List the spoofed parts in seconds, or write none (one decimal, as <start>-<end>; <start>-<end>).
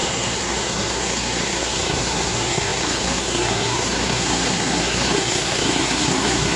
0.0-6.6